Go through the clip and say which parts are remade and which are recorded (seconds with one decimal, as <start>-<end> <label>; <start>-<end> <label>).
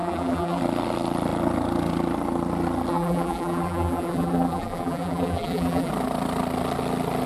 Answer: 0.0-0.6 remade; 0.6-2.9 recorded; 2.9-5.9 remade; 5.9-7.3 recorded